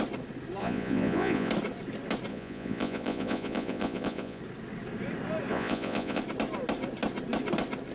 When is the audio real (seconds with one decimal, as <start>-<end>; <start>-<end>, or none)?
0.0-0.6; 1.5-2.3; 4.4-5.5; 6.2-7.9